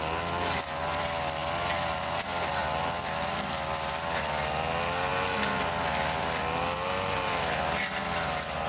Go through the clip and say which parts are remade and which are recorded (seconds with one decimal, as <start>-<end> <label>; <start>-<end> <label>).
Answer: 0.0-8.7 recorded